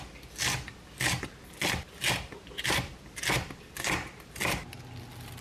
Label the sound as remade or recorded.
recorded